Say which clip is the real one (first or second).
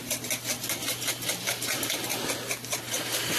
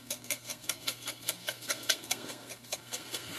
first